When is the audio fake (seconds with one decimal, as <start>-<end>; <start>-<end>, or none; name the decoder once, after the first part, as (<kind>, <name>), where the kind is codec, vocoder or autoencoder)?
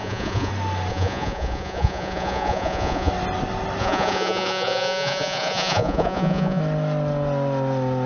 0.0-0.5 (vocoder, Vocos); 0.9-3.1; 3.8-6.6